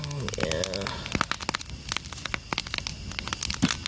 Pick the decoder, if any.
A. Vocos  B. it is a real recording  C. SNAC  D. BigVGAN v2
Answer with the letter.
B